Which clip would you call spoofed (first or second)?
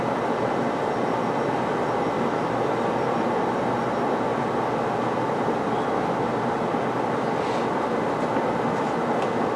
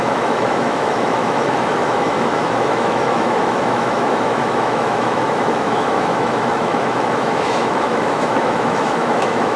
second